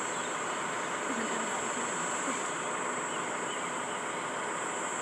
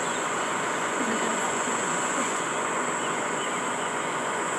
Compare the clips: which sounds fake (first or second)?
second